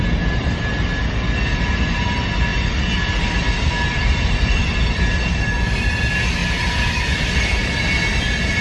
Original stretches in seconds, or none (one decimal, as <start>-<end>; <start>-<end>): 0.0-2.5; 5.8-6.4; 7.8-8.6